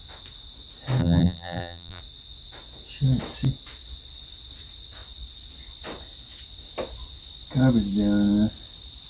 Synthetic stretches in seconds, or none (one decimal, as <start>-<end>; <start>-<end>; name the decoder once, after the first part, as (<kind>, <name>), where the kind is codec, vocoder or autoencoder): 1.0-2.0 (vocoder, BigVGAN v2)